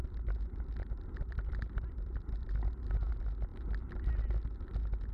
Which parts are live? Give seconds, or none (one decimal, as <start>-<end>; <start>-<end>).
3.1-3.5; 4.1-5.1